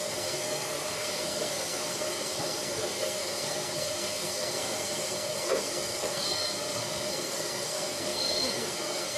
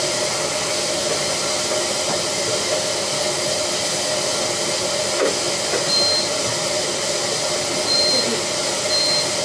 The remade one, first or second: first